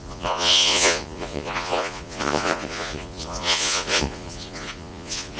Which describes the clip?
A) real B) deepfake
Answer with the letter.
B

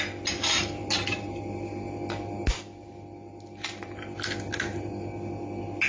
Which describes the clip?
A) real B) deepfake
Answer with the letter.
A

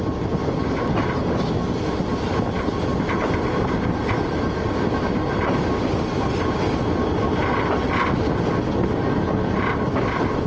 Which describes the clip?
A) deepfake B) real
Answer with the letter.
B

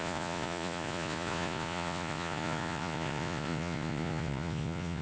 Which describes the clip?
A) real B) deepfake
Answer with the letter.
B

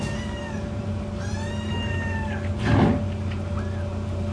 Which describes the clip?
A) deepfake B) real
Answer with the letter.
B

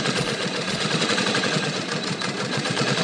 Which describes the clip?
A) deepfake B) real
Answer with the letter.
A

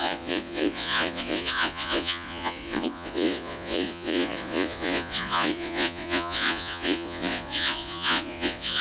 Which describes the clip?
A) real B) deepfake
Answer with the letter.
B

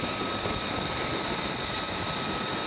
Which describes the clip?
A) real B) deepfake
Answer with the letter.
A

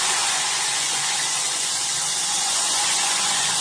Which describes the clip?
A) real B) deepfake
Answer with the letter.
B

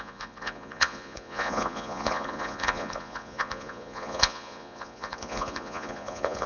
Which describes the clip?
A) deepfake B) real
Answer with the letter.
A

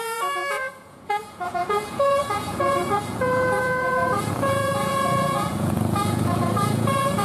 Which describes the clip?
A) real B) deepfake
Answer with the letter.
B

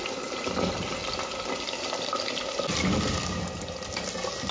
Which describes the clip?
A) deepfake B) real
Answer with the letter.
B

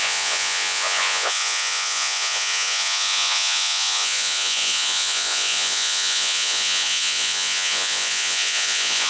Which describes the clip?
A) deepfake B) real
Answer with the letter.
A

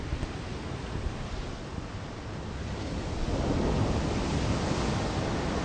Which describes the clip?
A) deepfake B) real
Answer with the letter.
B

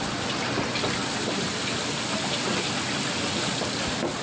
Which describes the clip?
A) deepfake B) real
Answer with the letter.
B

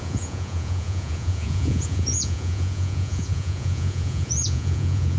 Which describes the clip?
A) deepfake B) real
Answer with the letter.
A